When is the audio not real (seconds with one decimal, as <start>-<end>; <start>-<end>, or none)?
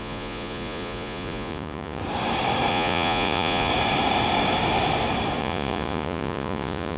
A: 0.0-2.0; 2.7-3.7; 5.4-7.0